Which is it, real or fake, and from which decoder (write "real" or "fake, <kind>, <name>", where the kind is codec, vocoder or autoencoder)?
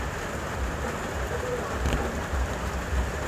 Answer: real